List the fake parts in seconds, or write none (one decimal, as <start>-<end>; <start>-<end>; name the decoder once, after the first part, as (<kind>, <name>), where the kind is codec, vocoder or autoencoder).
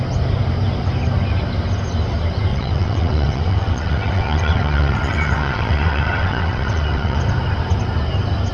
2.5-7.2 (vocoder, WaveNeXt)